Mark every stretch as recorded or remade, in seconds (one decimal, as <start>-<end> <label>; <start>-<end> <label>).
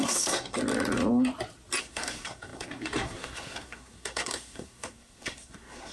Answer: 0.0-0.6 remade; 0.6-1.8 recorded; 1.8-5.9 remade